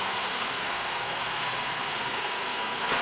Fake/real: fake